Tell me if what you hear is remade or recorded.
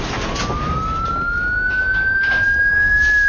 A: recorded